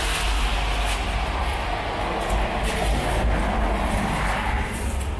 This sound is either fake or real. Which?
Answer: real